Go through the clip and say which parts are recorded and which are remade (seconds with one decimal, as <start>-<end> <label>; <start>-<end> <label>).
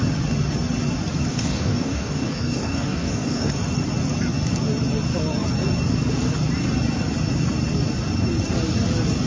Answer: 0.0-1.3 recorded; 1.3-3.5 remade; 3.5-9.3 recorded